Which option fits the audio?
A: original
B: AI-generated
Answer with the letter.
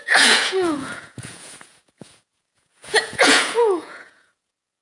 B